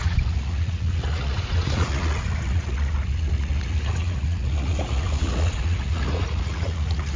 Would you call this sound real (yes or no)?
no